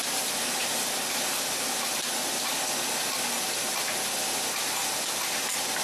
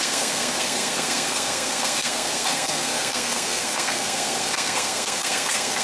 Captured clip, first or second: first